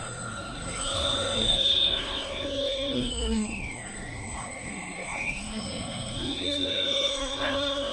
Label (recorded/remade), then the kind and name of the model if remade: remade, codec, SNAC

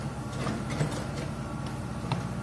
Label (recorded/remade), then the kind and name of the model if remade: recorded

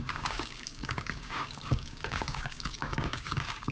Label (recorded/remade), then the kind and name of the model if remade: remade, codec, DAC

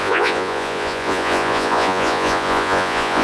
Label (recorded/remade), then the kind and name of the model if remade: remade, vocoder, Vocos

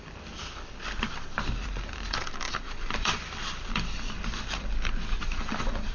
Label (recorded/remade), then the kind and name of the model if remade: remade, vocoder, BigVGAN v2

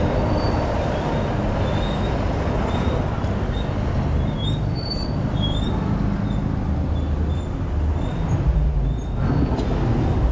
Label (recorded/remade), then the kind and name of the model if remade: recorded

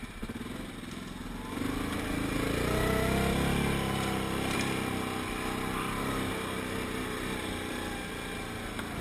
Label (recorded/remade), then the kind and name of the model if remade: recorded